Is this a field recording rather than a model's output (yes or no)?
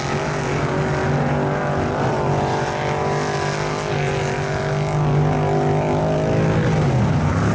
yes